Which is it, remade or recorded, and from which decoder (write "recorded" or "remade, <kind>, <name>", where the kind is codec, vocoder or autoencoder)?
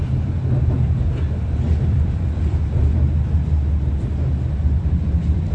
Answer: recorded